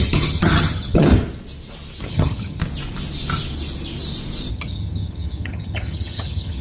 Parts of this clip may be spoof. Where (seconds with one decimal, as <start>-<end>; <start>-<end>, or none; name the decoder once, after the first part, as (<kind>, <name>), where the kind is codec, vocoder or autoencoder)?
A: 0.0-1.1 (vocoder, HiFi-GAN); 2.1-2.6; 4.5-6.6